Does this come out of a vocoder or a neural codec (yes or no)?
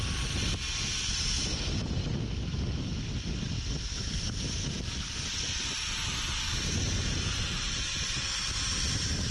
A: no